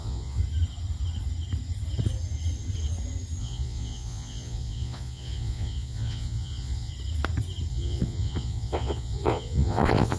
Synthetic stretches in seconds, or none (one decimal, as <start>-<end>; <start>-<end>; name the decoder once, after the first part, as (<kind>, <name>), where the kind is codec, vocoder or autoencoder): 0.0-0.4 (vocoder, Vocos); 3.4-6.9; 7.7-10.2